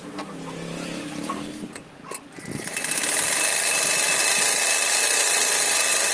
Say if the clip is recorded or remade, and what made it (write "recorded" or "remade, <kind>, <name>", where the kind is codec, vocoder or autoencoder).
recorded